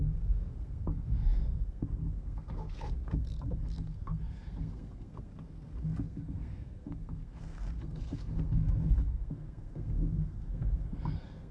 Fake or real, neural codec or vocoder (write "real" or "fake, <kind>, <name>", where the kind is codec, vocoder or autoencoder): fake, codec, SNAC